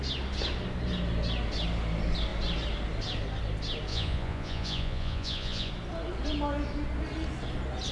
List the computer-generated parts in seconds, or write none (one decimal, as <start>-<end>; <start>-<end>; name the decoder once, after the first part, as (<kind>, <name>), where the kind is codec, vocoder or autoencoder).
3.9-5.7 (vocoder, Vocos)